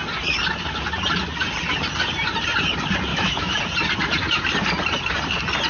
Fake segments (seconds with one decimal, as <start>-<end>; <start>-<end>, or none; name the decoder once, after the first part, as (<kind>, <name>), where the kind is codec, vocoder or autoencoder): 3.1-3.6 (autoencoder, DAC-VAE)